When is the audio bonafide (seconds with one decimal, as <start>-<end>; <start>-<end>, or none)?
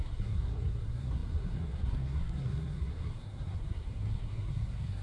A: none